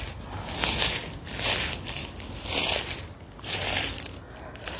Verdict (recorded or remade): recorded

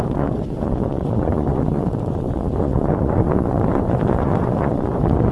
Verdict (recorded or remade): remade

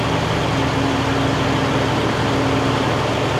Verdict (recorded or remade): recorded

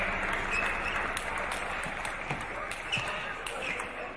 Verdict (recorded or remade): recorded